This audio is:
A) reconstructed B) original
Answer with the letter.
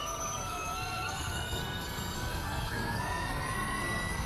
A